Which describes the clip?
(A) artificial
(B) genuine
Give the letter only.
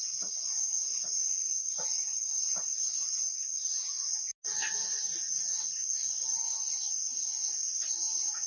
B